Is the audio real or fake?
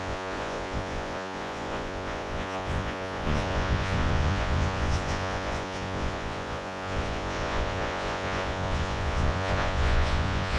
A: fake